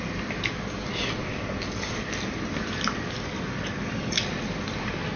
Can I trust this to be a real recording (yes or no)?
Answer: yes